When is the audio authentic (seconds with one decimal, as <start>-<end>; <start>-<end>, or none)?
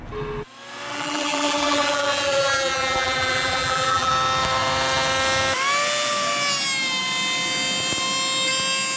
0.0-0.9; 4.1-9.0